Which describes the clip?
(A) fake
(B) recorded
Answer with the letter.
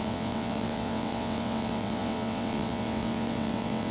A